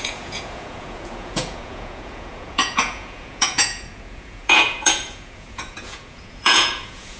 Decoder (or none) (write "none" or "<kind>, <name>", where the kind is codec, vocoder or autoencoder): vocoder, Vocos